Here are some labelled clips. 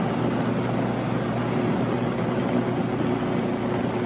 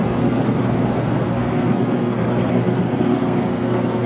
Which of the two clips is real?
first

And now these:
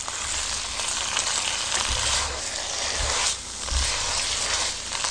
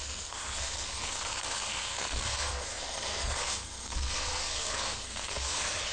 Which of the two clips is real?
first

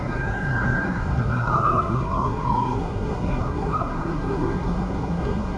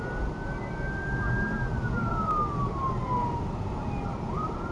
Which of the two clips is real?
second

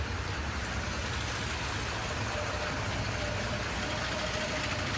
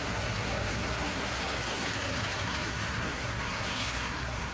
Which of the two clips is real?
first